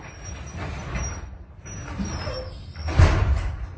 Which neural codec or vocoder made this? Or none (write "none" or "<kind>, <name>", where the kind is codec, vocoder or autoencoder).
none